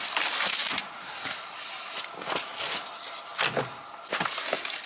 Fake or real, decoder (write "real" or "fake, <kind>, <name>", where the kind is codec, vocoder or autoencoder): real